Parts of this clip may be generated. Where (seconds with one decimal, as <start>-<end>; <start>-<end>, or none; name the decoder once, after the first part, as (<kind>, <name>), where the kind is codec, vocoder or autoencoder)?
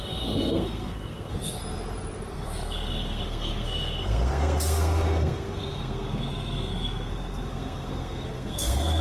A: 0.0-1.6 (codec, SNAC); 2.3-9.0